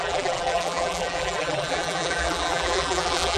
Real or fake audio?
fake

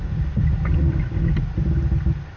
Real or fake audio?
real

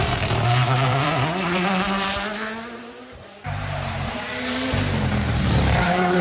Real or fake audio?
fake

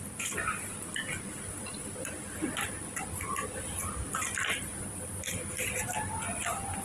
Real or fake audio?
real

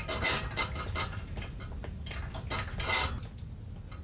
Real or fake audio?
real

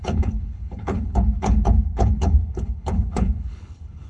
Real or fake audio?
fake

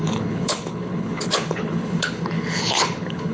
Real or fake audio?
fake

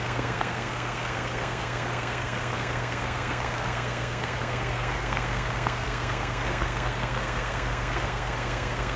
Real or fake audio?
fake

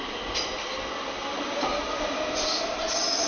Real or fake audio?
real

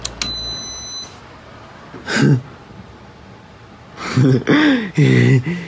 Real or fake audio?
real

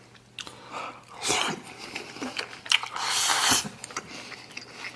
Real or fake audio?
real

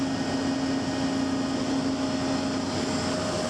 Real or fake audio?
real